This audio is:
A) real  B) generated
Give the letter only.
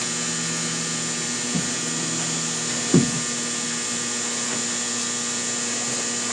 A